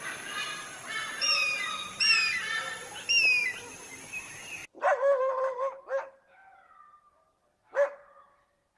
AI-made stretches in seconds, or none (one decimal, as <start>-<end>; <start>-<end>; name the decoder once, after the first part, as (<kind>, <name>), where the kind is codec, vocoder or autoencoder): 0.0-4.6 (vocoder, BigVGAN v2); 5.2-6.4